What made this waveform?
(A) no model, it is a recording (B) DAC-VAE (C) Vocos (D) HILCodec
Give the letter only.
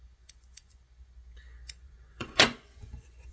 C